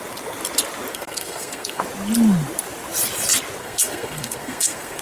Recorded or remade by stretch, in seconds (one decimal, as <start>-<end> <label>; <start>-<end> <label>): 0.0-0.9 recorded; 0.9-1.8 remade; 1.8-3.6 recorded; 3.6-5.0 remade

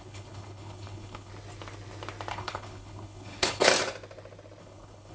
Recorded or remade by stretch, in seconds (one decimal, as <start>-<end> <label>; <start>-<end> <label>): 0.0-1.3 remade; 1.3-2.3 recorded; 2.3-3.7 remade; 3.7-4.6 recorded; 4.6-5.1 remade

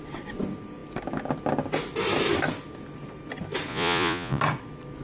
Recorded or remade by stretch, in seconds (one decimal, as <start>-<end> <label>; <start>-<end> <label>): 0.0-3.7 recorded; 3.7-4.4 remade; 4.4-5.0 recorded

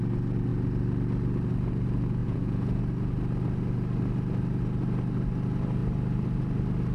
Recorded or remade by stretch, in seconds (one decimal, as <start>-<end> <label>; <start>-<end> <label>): 0.0-2.2 recorded; 2.2-2.8 remade; 2.8-6.9 recorded